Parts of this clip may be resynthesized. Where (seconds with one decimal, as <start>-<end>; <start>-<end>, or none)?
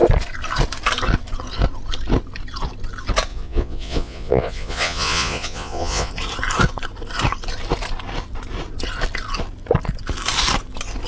3.3-6.1